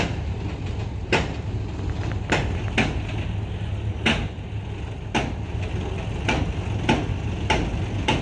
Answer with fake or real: real